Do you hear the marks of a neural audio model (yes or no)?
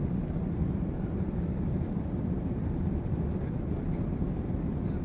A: yes